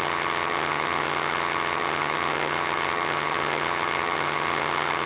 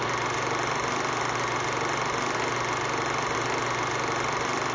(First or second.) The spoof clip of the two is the first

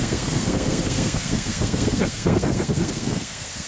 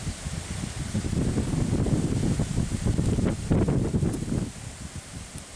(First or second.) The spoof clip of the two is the first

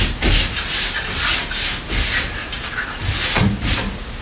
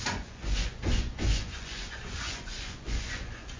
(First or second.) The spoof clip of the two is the second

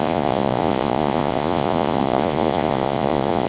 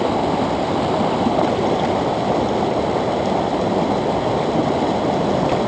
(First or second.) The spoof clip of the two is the first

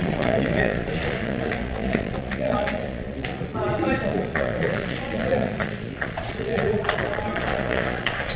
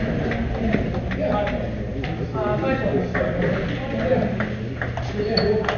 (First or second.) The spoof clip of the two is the first